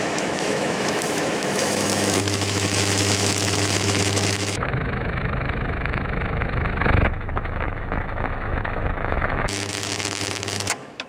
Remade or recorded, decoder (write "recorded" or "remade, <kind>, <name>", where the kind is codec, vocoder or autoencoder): remade, autoencoder, DAC-VAE